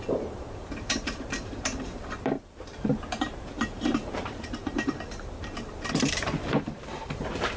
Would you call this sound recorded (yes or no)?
no